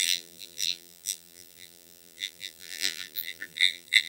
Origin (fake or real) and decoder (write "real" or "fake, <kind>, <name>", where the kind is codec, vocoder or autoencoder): fake, vocoder, BigVGAN v2